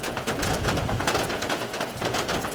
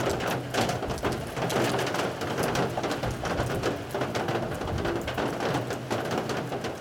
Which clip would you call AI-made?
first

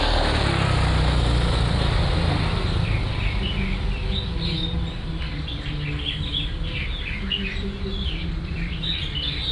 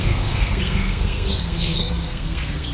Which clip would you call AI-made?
second